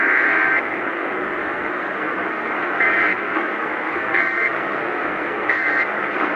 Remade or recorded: remade